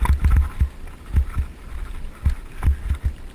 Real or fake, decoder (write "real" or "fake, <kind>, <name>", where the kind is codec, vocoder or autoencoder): real